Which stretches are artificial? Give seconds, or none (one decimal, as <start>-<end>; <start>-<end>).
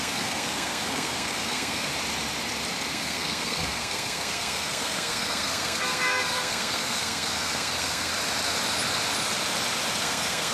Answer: 0.0-1.9; 2.9-8.1; 10.0-10.5